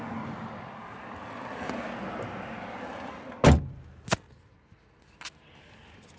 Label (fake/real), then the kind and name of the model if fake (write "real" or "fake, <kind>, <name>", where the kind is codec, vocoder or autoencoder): real